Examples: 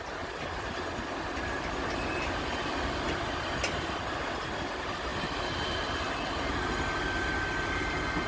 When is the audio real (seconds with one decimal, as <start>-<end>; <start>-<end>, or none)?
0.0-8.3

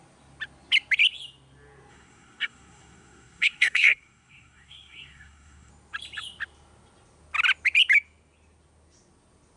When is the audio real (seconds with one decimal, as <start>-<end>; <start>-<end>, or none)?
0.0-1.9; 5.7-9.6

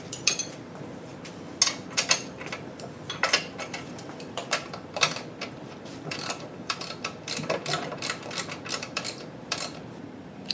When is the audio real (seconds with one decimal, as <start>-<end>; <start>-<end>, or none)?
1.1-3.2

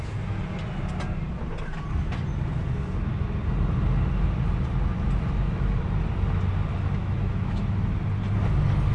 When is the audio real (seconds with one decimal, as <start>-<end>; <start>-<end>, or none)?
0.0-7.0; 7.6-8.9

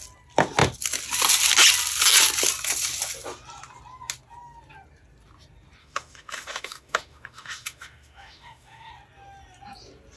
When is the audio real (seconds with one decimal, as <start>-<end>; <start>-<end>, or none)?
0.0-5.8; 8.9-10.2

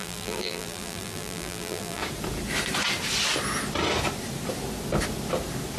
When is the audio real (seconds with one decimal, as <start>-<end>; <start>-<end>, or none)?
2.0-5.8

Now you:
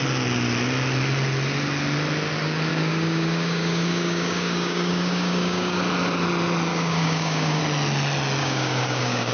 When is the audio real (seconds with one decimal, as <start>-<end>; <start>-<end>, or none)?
0.0-2.7; 5.8-6.7; 7.6-8.4

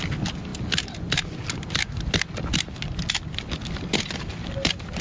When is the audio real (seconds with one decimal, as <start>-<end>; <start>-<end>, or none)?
0.0-5.0